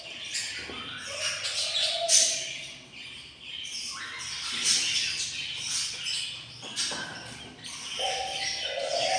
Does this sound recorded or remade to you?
recorded